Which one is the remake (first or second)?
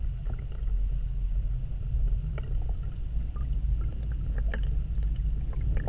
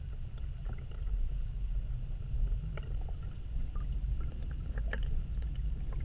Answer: second